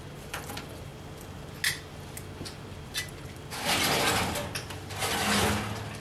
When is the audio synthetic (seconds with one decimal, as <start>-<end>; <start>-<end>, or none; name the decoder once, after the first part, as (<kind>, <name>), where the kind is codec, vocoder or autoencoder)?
none